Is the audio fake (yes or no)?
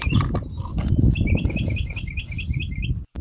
no